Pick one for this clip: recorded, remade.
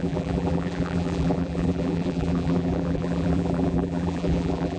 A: remade